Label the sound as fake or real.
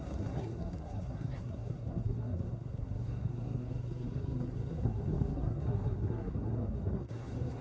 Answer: fake